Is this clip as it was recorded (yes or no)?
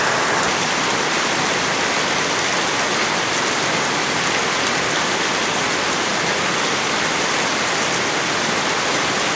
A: yes